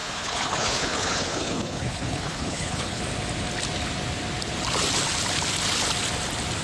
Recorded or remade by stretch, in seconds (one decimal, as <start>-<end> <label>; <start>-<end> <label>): 0.0-3.0 remade; 3.0-6.6 recorded